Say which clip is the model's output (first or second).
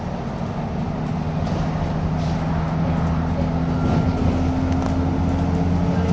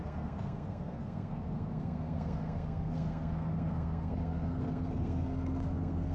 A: second